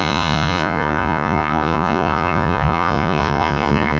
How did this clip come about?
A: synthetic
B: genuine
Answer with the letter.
A